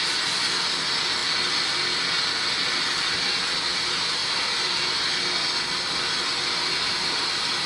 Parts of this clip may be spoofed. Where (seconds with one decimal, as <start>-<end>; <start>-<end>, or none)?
4.2-4.8; 6.9-7.7